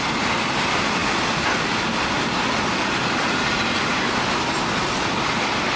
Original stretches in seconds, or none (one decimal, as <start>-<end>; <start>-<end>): 0.0-5.8